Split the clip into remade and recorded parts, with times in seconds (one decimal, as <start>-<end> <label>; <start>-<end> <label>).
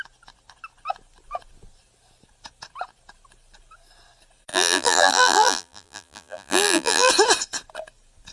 0.0-4.5 recorded; 4.5-7.1 remade; 7.1-8.3 recorded